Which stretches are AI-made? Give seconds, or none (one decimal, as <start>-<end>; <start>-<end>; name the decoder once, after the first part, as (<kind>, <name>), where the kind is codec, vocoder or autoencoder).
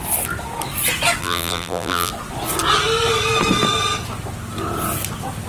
1.2-2.1 (vocoder, BigVGAN v2)